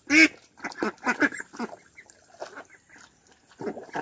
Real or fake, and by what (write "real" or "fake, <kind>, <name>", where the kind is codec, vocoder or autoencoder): real